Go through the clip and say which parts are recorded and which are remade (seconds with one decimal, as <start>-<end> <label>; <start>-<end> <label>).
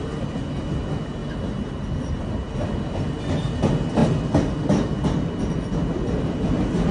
0.0-6.9 recorded